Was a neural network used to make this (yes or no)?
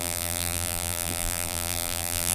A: yes